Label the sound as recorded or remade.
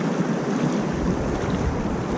recorded